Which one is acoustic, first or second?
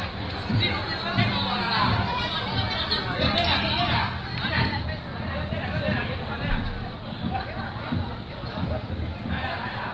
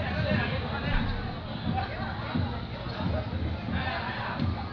second